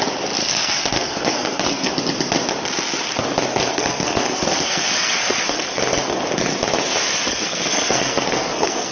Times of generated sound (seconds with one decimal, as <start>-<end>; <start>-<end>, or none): 0.4-1.9; 3.5-5.8; 7.3-8.9